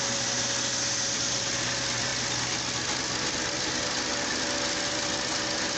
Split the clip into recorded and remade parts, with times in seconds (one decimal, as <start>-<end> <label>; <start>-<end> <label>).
0.0-5.8 recorded